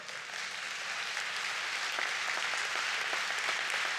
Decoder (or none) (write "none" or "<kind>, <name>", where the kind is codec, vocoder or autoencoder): none